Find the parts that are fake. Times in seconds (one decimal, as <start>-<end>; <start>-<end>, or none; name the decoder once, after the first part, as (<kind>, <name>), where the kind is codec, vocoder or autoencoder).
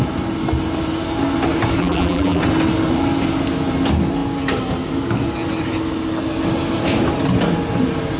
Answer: 1.8-2.4 (vocoder, BigVGAN v2)